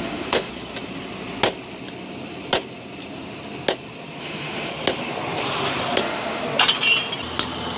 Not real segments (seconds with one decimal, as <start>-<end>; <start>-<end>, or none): 0.0-0.5; 4.2-4.7; 6.0-6.4